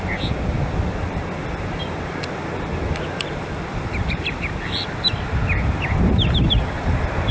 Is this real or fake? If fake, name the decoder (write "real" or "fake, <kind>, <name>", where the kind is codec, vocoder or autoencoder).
real